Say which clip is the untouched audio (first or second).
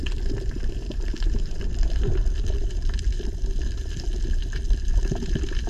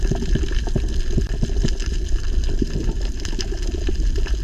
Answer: second